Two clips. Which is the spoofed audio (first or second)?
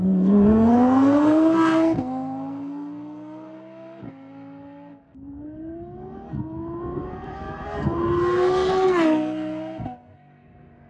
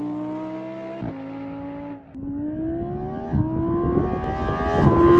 first